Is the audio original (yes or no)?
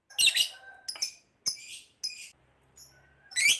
yes